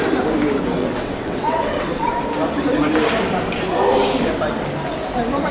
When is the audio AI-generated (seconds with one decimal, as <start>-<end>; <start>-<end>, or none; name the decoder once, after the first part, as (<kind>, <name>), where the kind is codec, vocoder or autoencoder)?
0.8-2.1 (vocoder, WaveNeXt)